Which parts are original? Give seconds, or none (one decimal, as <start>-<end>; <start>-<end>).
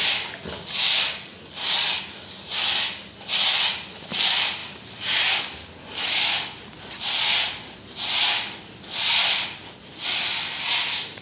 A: 0.0-11.2